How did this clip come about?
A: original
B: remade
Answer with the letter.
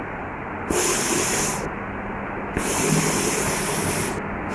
A